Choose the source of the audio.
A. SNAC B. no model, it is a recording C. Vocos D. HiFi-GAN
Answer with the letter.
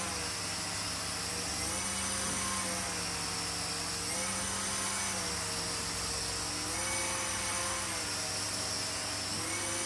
B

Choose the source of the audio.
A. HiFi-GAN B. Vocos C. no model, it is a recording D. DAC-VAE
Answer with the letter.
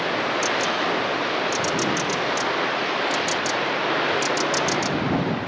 C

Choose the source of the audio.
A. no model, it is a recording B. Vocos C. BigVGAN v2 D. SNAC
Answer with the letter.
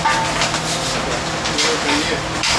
A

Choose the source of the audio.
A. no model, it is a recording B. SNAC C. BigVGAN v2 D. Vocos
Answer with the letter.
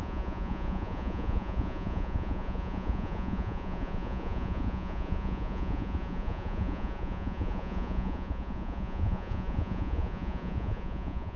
D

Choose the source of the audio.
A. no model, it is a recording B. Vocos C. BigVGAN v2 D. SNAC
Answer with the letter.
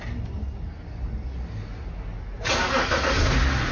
A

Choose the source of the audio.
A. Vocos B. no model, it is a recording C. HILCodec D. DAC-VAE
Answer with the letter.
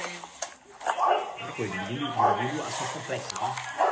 B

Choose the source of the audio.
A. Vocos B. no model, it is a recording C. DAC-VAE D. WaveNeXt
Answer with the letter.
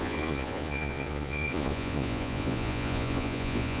A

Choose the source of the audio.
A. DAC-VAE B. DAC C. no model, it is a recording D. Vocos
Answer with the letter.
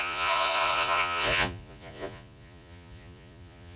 D